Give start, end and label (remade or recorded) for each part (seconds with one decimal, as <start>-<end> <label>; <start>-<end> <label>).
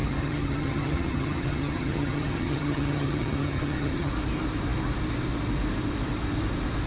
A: 0.0-4.1 remade; 4.1-6.9 recorded